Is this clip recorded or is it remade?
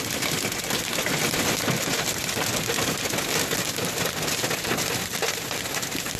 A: recorded